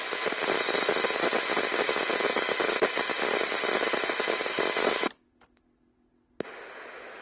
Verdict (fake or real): real